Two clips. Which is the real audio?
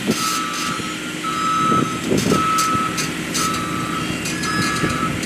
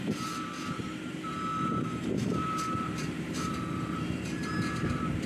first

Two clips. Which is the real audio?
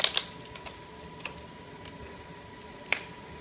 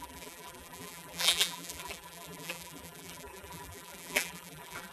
first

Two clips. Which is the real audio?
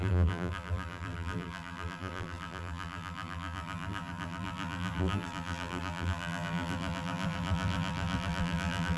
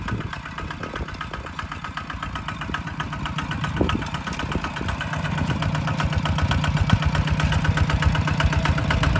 second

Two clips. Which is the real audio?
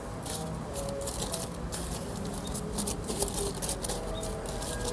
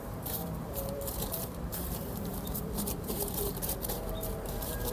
first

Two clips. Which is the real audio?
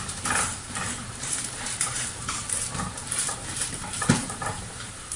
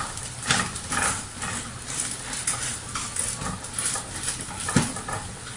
second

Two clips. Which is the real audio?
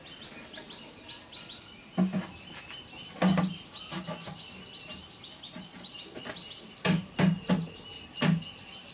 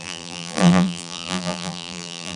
first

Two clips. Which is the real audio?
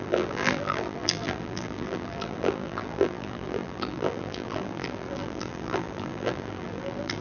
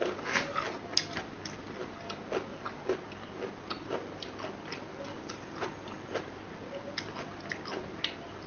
second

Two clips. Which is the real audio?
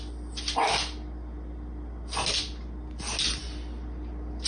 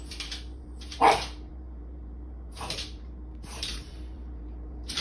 first